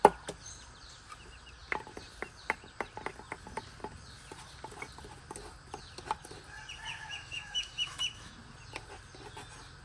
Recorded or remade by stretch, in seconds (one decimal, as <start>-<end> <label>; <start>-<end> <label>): 0.0-6.9 recorded; 6.9-8.3 remade; 8.3-9.8 recorded